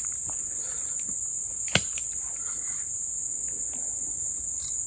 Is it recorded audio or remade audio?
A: recorded